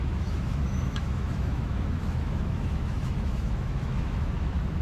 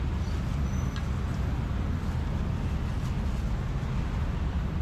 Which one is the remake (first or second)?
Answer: first